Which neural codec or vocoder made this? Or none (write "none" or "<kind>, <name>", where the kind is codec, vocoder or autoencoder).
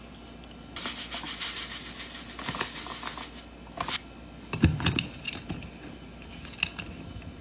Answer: none